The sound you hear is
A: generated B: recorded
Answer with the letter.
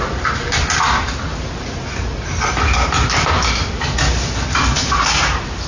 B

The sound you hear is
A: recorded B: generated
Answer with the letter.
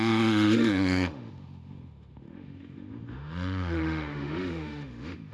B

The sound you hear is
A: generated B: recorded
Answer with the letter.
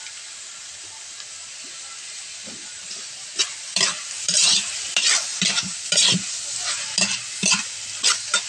B